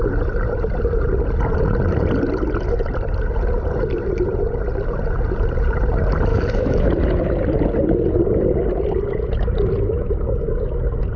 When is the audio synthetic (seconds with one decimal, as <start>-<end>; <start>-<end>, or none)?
6.3-6.9